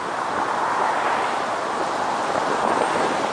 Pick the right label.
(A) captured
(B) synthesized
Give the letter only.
A